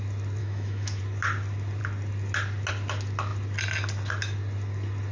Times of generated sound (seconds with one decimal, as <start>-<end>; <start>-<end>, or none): 0.4-1.0